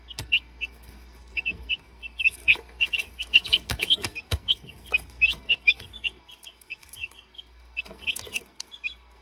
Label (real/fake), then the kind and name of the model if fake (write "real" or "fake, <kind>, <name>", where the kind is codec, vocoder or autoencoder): fake, codec, SNAC